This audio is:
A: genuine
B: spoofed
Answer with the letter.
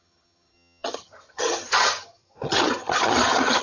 B